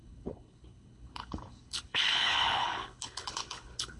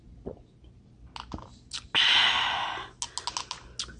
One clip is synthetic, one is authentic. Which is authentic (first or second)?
second